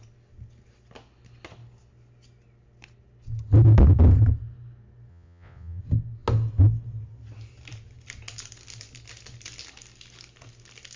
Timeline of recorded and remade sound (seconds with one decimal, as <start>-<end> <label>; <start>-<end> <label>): 0.0-5.1 recorded; 5.1-5.8 remade; 5.8-11.0 recorded